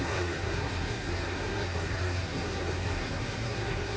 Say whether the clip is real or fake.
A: fake